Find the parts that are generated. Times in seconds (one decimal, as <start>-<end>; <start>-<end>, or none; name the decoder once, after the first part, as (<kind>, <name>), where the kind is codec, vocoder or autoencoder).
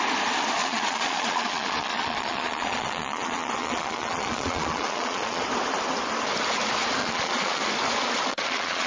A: 0.6-5.4 (vocoder, Vocos); 7.0-7.6; 8.3-8.9